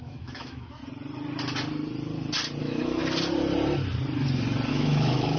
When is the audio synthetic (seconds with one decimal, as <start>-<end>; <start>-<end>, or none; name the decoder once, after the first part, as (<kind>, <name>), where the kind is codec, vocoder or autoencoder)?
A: 0.0-0.8 (autoencoder, DAC-VAE); 2.6-3.0; 4.7-5.4